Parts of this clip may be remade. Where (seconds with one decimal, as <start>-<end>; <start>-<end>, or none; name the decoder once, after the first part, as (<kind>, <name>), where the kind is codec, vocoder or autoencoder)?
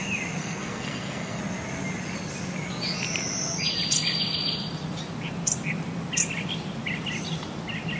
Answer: 0.4-1.4 (codec, SNAC)